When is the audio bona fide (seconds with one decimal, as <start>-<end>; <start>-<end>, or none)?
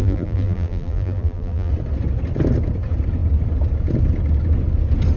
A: 1.7-5.2